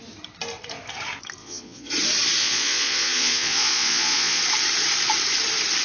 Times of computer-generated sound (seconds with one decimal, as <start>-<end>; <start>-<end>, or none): 1.4-1.9; 2.4-4.4